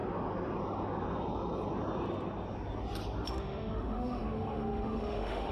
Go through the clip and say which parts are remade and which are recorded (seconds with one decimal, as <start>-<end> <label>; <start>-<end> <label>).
0.0-3.3 recorded; 3.3-5.5 remade